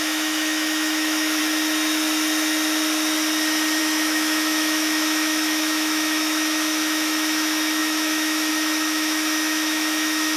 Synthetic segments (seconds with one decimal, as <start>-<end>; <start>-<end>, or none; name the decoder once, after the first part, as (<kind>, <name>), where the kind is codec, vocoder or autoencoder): 0.0-1.4 (autoencoder, DAC-VAE); 3.8-10.4